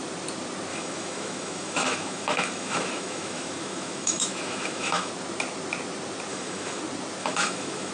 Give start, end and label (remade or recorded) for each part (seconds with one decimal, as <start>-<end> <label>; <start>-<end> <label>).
0.0-0.7 recorded; 0.7-5.1 remade; 5.1-6.3 recorded; 6.3-6.8 remade; 6.8-7.2 recorded; 7.2-7.9 remade